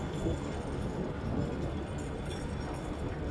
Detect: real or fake real